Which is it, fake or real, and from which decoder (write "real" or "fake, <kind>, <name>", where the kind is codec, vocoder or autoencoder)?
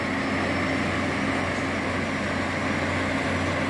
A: real